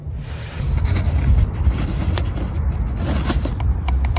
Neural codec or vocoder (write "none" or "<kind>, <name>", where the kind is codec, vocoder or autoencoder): none